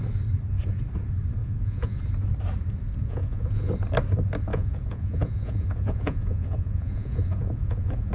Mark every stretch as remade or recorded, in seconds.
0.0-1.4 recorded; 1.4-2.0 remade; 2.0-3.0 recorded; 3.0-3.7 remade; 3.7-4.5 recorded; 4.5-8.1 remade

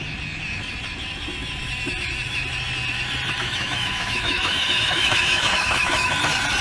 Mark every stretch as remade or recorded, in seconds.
0.0-3.4 recorded; 3.4-6.1 remade; 6.1-6.6 recorded